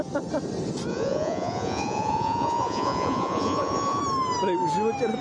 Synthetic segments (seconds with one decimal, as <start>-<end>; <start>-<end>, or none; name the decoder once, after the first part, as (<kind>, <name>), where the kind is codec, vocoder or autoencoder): 0.9-4.0 (vocoder, Vocos)